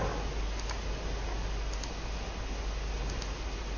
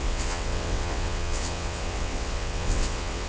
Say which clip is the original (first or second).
first